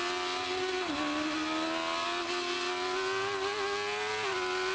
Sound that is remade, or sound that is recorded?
recorded